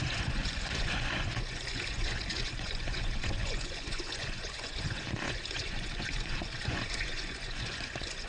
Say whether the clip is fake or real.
fake